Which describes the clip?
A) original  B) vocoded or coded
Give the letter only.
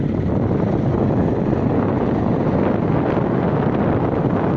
A